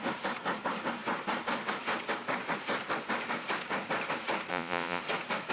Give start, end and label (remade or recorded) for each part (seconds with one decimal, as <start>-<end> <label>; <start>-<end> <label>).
0.0-4.5 recorded; 4.5-5.0 remade; 5.0-5.5 recorded